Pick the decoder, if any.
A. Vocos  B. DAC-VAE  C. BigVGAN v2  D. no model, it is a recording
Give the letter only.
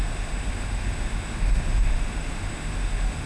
B